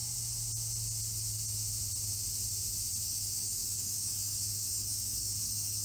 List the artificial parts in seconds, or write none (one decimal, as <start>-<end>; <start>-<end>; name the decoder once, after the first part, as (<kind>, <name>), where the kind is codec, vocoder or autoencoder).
3.0-5.8 (codec, DAC)